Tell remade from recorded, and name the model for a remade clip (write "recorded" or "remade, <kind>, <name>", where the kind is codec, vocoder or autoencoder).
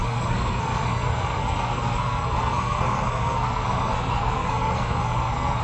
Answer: remade, codec, SNAC